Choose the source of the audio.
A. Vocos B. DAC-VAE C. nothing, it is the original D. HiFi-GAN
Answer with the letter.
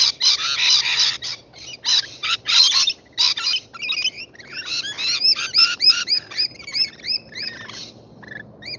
C